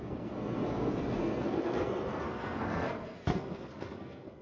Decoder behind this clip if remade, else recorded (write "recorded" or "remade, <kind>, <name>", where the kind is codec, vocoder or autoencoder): remade, codec, SNAC